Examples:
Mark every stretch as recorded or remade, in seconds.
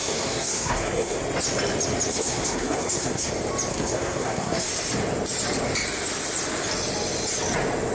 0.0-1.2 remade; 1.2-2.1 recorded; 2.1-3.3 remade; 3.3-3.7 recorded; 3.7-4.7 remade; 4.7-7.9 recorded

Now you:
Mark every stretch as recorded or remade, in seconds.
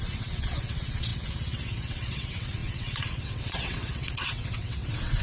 0.0-5.2 remade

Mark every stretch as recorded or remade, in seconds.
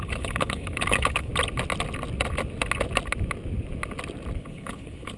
0.0-1.3 remade; 1.3-4.4 recorded; 4.4-5.2 remade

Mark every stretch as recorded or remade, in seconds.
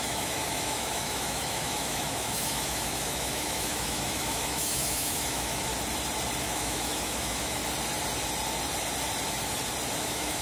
0.0-5.7 remade; 5.7-6.4 recorded; 6.4-7.6 remade; 7.6-10.0 recorded; 10.0-10.4 remade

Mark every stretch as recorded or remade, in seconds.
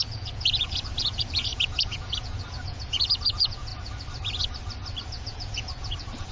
0.0-3.7 remade; 3.7-5.0 recorded; 5.0-6.3 remade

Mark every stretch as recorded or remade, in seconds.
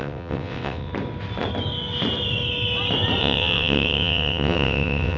0.0-0.9 remade; 0.9-3.2 recorded; 3.2-5.2 remade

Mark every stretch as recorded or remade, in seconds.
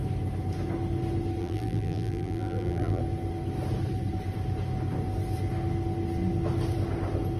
0.0-1.4 recorded; 1.4-3.0 remade; 3.0-7.4 recorded